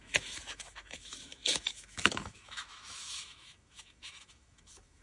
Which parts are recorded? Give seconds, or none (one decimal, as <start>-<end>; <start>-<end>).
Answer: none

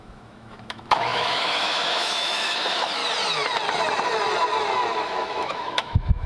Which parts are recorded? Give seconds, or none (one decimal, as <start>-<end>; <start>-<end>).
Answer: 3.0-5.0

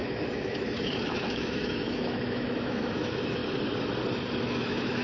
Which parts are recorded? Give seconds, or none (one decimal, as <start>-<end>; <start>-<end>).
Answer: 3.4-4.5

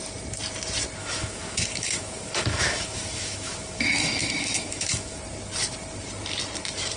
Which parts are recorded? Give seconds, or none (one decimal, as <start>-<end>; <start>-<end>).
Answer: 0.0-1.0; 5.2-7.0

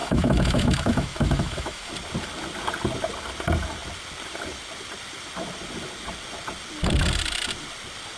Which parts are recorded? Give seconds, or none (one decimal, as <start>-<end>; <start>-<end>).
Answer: 1.9-8.2

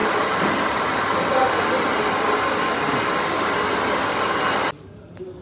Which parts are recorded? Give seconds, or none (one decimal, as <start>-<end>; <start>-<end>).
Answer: 0.0-5.4